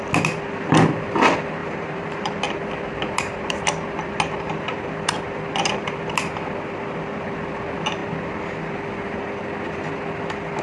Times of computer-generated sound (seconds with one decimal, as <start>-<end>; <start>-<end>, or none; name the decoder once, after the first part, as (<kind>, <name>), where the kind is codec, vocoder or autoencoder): 1.6-2.4 (vocoder, BigVGAN v2)